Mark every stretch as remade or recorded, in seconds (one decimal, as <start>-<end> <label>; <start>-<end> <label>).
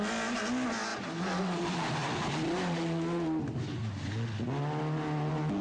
0.0-5.6 recorded